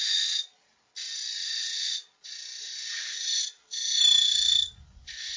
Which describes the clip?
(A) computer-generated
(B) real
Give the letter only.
B